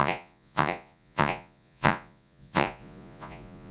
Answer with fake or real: fake